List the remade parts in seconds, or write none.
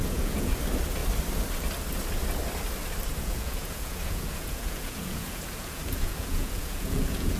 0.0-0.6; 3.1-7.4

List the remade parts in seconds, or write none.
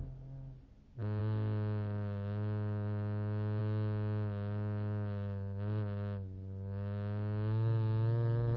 none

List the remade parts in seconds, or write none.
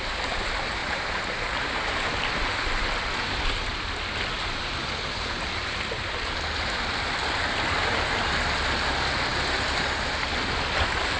0.8-2.2; 4.3-7.5